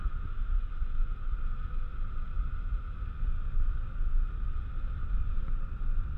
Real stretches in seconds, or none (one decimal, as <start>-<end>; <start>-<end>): 0.0-6.2